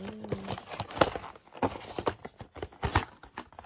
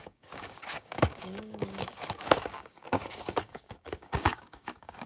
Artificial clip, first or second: second